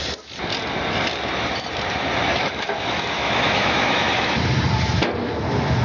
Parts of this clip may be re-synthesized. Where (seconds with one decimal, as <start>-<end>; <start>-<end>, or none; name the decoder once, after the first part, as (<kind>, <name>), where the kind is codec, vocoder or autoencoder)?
2.3-4.3 (autoencoder, DAC-VAE)